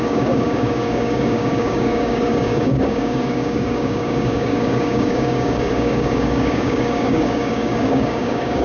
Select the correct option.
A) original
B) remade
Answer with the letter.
B